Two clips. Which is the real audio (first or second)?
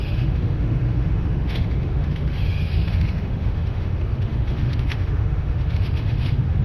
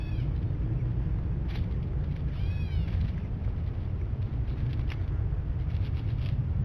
second